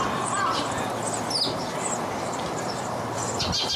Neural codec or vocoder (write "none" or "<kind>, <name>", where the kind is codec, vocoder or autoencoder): none